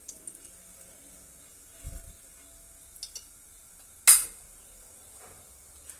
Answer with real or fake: real